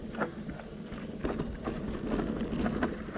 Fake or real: real